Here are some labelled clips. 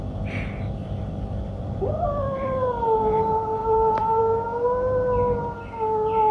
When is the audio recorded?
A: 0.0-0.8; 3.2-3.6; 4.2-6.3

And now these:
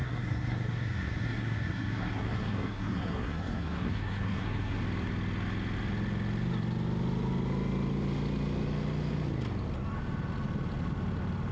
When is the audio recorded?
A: 4.8-11.5

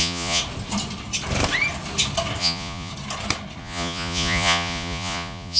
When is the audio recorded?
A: 0.4-2.4; 2.9-3.6

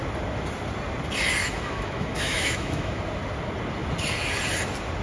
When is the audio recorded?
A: 0.0-1.4; 3.0-5.0

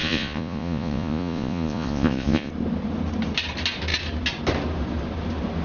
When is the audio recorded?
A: 2.5-5.6

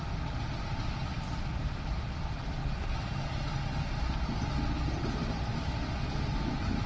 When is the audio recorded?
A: 0.0-1.5; 2.0-6.9

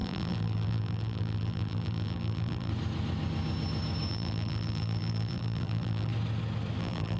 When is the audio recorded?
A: 2.7-4.1; 6.1-6.8

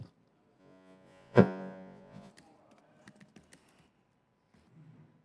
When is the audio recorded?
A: 0.0-0.6; 2.3-5.2